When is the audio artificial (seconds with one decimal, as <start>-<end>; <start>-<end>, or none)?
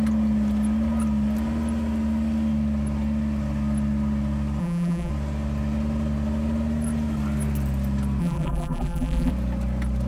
4.6-5.1; 8.2-9.3